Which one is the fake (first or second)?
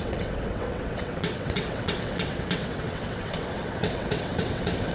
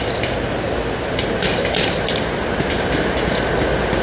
first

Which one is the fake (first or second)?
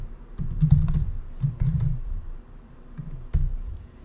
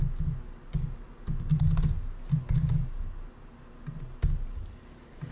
first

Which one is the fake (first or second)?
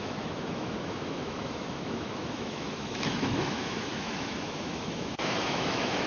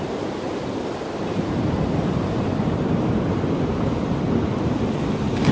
first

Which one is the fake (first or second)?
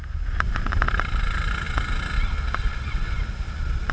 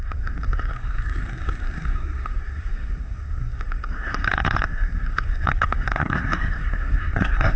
second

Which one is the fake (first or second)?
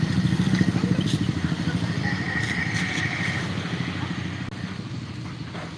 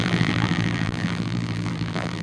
second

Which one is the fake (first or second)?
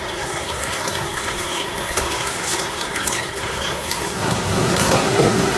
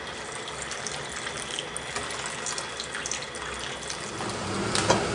first